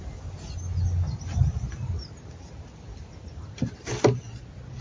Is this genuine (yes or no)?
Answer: yes